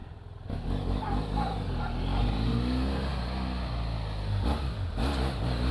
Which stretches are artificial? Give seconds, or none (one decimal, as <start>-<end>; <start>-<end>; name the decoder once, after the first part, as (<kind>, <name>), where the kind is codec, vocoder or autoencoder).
none